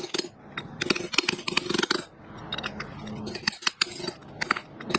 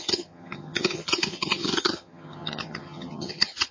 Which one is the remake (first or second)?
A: second